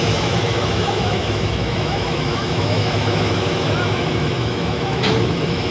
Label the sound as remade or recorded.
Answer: remade